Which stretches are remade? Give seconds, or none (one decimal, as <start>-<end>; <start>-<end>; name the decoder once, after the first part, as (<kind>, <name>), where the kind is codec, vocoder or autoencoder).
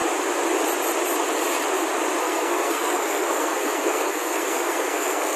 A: 2.2-5.4 (codec, SNAC)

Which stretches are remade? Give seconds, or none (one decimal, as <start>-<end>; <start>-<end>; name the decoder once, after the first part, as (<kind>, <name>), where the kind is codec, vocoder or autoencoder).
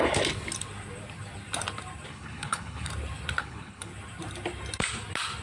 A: 2.1-2.9 (codec, HILCodec); 3.4-3.9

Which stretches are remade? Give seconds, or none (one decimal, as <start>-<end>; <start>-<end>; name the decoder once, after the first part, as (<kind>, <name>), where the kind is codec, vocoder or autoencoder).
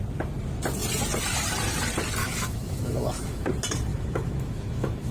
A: 2.2-3.5 (autoencoder, DAC-VAE); 3.9-5.1